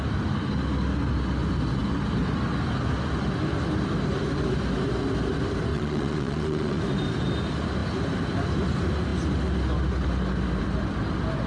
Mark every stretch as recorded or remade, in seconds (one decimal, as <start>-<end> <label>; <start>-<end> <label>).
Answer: 0.0-5.7 recorded; 5.7-6.8 remade; 6.8-11.5 recorded